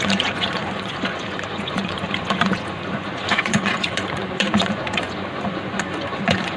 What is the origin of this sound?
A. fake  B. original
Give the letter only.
A